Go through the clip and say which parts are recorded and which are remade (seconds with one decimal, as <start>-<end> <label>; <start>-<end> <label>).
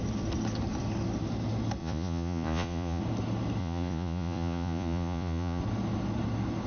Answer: 0.0-1.8 recorded; 1.8-3.0 remade; 3.0-3.6 recorded; 3.6-5.6 remade; 5.6-6.7 recorded